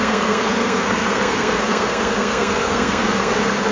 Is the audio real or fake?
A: fake